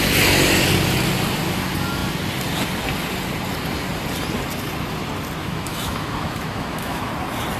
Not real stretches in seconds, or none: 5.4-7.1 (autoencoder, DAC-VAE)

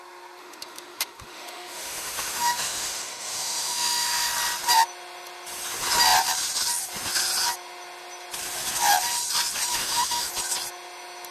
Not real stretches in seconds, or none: 0.4-4.3 (autoencoder, DAC-VAE); 9.7-10.3

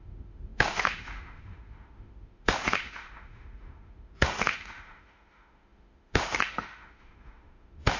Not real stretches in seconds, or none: 0.0-8.0 (autoencoder, DAC-VAE)

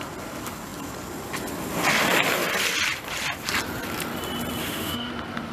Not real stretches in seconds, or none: 4.6-5.1 (autoencoder, DAC-VAE)

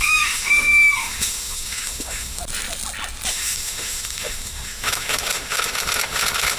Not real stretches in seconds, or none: 0.0-2.4 (autoencoder, DAC-VAE); 3.3-6.6